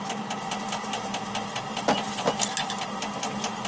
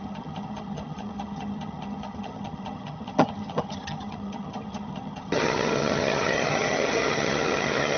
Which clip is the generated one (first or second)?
second